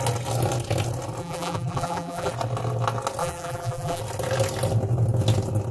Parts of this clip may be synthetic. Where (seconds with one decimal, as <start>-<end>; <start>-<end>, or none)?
1.2-2.3; 3.2-4.0